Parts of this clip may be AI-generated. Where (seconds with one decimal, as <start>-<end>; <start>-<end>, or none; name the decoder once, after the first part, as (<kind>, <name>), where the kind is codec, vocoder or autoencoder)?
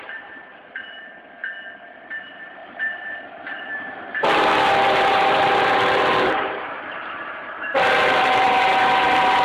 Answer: 0.0-1.4 (vocoder, BigVGAN v2); 2.2-9.4